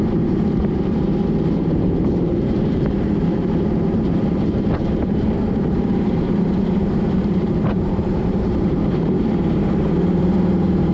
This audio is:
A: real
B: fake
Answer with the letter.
B